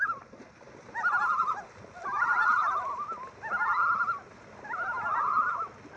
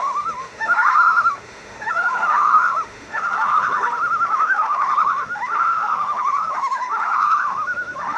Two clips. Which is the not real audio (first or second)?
second